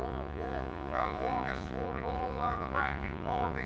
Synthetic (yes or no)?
yes